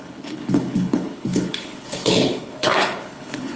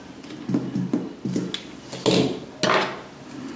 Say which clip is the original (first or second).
second